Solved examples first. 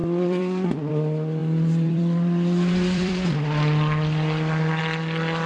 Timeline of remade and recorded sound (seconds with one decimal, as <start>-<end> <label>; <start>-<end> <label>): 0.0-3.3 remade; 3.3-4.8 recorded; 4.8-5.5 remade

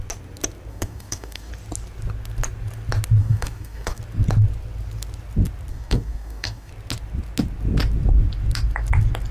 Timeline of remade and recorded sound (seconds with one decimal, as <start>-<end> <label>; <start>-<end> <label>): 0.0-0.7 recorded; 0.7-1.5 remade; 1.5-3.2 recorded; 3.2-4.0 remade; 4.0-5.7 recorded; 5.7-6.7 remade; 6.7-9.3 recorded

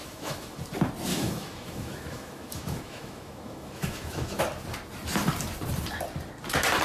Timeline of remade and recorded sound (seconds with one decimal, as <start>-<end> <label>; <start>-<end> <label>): 0.0-0.6 remade; 0.6-1.1 recorded; 1.1-4.4 remade; 4.4-6.8 recorded